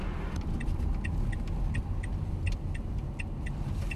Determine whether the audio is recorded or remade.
recorded